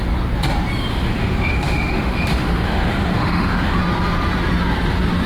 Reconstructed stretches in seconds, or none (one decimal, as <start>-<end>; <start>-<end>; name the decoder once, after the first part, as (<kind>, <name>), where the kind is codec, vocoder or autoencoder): 0.9-3.8 (autoencoder, DAC-VAE)